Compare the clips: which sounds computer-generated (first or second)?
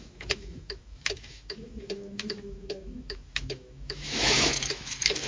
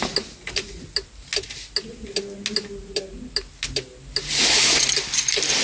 first